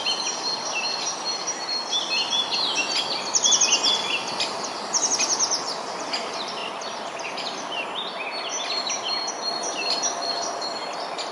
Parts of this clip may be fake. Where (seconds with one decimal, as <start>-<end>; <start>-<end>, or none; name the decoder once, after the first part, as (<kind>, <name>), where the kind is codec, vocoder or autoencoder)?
none